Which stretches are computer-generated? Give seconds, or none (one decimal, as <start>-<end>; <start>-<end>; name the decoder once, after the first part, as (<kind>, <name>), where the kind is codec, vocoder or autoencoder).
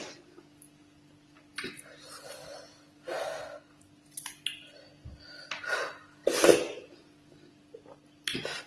none